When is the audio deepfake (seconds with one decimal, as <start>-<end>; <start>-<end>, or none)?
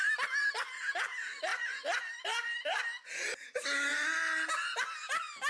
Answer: 1.5-2.8